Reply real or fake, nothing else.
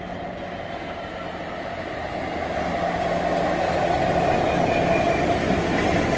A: real